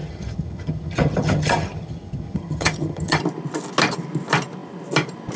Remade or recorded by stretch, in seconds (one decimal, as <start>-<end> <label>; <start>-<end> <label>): 0.0-3.2 remade; 3.2-5.4 recorded